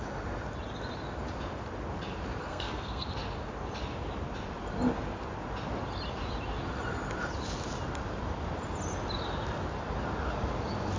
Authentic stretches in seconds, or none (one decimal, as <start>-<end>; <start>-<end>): 0.0-2.4; 3.1-11.0